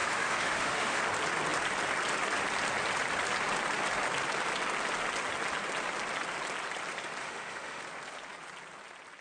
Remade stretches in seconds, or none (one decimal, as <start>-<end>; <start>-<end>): 0.0-1.0; 7.2-7.8